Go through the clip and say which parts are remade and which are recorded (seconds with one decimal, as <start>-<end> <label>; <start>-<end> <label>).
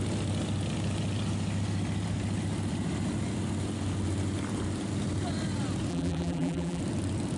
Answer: 0.0-5.9 recorded; 5.9-6.8 remade; 6.8-7.4 recorded